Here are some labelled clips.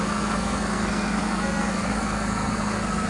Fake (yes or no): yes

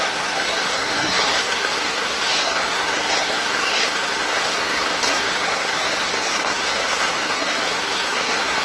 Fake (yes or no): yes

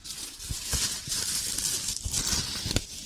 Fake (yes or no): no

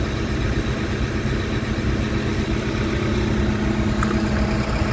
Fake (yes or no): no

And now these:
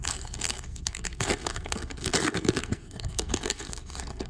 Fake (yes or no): yes